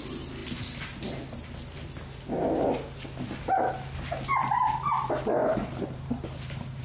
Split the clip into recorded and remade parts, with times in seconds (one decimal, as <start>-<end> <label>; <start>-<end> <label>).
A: 0.0-5.4 recorded; 5.4-6.8 remade